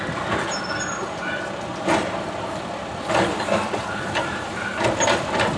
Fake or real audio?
real